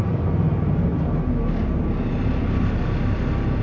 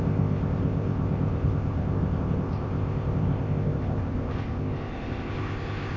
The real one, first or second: first